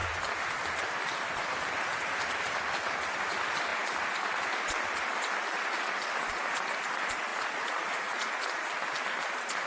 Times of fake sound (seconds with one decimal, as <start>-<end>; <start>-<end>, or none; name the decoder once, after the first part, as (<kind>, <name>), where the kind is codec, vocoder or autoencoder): 7.3-8.3 (vocoder, Vocos)